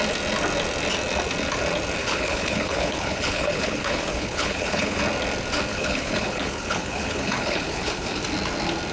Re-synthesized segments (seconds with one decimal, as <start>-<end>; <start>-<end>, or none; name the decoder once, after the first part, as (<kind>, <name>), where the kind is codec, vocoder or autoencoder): 2.0-5.0 (codec, HILCodec); 5.7-8.2